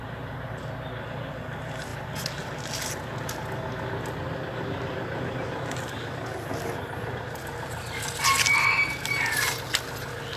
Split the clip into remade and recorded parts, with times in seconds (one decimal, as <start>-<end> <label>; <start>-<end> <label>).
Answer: 0.0-10.4 recorded